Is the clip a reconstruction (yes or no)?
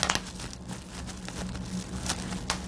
no